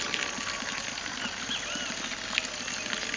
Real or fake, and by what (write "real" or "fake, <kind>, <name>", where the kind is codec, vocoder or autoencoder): real